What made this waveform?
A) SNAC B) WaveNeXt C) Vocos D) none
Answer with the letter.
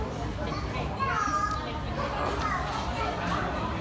D